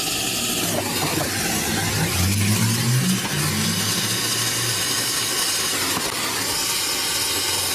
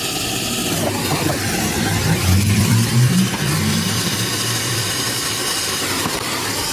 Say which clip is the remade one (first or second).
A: second